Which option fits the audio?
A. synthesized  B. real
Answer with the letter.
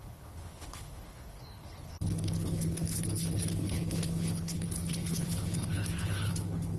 A